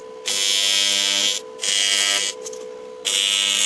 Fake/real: real